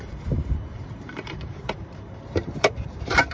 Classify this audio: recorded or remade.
remade